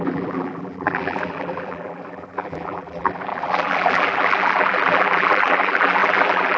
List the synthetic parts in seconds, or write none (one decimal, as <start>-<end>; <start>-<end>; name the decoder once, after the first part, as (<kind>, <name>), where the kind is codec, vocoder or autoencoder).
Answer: 0.0-6.6 (vocoder, BigVGAN v2)